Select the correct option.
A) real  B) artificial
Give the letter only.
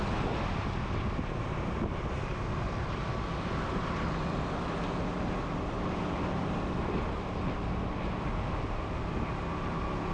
A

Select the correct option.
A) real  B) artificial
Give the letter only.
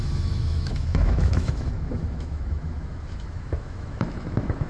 B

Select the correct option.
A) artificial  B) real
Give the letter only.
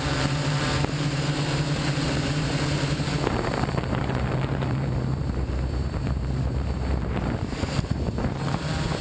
A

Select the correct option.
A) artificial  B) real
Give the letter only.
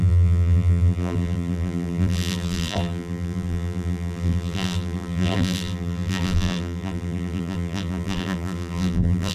A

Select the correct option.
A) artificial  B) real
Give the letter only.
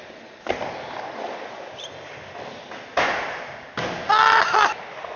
B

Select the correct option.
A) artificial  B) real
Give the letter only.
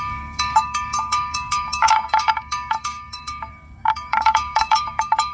A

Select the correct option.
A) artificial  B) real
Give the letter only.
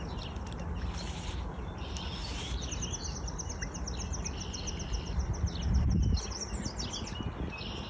B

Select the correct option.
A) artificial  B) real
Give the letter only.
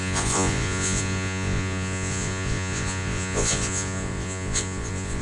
A